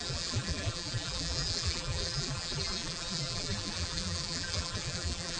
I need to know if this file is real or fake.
fake